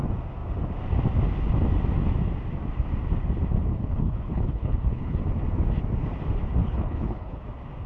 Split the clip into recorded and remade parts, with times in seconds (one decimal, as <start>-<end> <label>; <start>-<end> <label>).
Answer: 0.0-3.7 recorded; 3.7-5.2 remade; 5.2-6.6 recorded; 6.6-7.4 remade; 7.4-7.9 recorded